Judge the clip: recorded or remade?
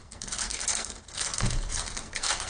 remade